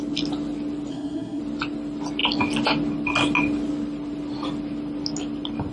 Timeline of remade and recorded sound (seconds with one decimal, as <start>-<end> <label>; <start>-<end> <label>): 0.0-0.9 recorded; 0.9-1.4 remade; 1.4-5.7 recorded